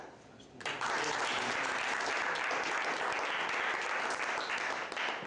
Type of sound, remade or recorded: recorded